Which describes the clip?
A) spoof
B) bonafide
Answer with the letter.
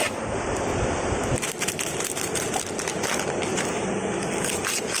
B